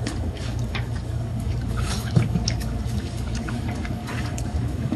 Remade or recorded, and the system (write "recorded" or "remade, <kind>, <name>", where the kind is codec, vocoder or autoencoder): remade, codec, DAC